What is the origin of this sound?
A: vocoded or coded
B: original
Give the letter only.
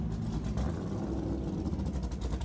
B